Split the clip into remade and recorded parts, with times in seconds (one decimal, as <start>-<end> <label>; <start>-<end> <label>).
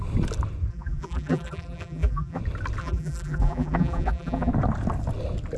0.0-0.7 recorded; 0.7-2.4 remade; 2.4-2.8 recorded; 2.8-4.5 remade; 4.5-5.6 recorded